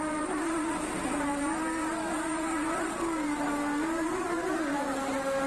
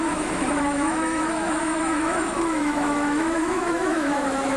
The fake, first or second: second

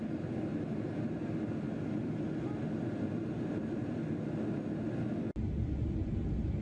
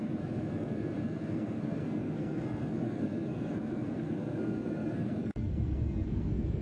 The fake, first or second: second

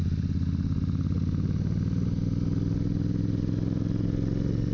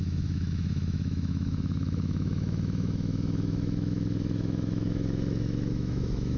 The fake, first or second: second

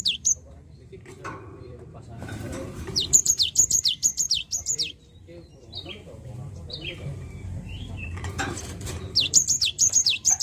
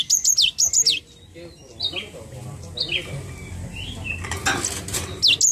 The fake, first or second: first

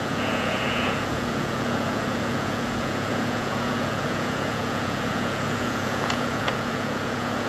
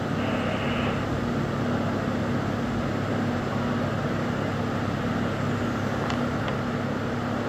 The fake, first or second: first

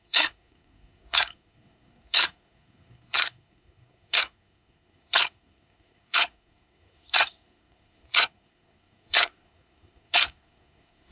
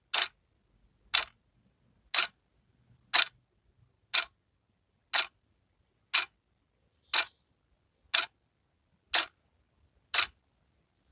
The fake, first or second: first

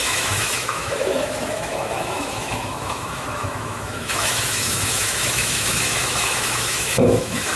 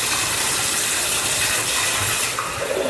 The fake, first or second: first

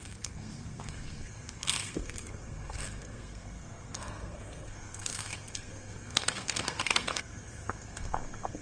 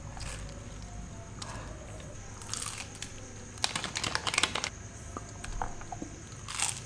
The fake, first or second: first